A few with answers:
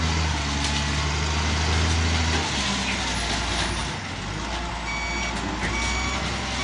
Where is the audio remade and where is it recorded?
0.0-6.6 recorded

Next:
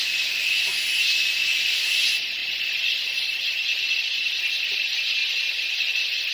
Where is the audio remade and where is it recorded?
0.0-6.3 recorded

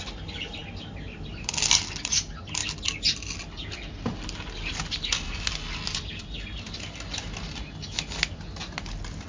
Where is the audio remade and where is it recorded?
0.0-9.3 recorded

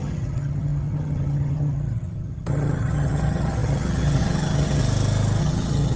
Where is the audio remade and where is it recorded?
0.0-4.8 remade; 4.8-5.4 recorded; 5.4-6.0 remade

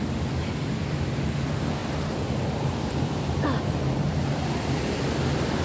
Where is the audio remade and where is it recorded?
0.0-5.6 recorded

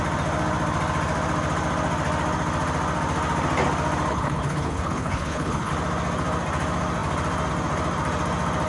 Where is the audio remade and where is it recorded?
0.0-4.1 recorded; 4.1-5.7 remade; 5.7-8.7 recorded

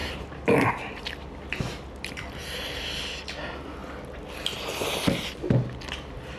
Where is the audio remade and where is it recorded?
0.0-0.7 remade; 0.7-6.4 recorded